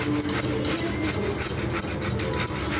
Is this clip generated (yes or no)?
no